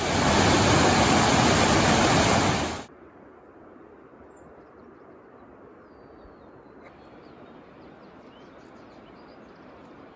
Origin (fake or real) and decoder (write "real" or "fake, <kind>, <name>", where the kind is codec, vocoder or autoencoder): real